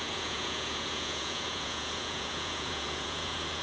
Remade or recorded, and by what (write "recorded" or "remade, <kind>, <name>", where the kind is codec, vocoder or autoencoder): remade, vocoder, Vocos